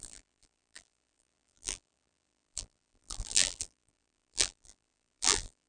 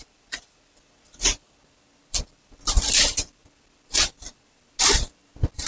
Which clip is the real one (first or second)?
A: second